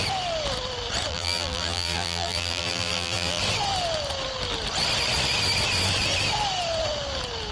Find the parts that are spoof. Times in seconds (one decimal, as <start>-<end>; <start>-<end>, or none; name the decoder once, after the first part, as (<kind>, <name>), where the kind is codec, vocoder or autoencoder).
1.1-3.4 (vocoder, BigVGAN v2)